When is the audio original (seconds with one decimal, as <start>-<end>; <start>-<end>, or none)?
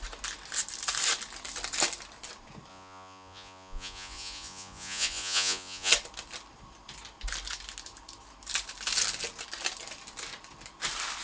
0.0-2.7; 5.9-11.2